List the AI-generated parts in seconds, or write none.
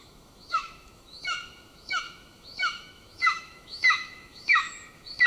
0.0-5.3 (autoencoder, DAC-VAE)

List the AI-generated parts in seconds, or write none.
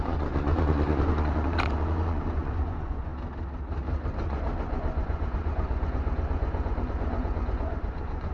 0.0-3.1 (vocoder, Vocos); 4.1-8.3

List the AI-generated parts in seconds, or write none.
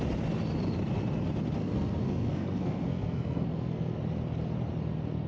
1.6-4.0 (codec, SNAC)